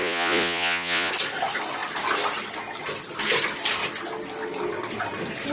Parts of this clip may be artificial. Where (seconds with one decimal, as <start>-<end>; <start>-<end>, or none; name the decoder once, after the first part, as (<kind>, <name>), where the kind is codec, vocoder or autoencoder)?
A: 0.0-1.1 (vocoder, Vocos)